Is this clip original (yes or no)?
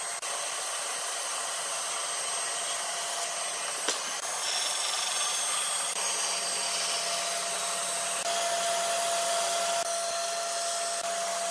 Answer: yes